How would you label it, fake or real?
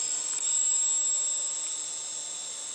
real